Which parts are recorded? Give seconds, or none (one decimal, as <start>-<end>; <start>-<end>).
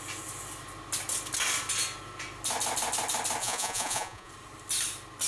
0.0-3.4; 4.3-5.3